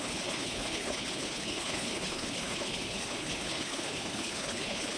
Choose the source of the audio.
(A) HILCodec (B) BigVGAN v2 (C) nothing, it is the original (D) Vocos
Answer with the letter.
A